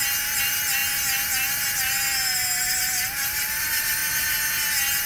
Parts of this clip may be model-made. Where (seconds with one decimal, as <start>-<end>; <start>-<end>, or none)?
none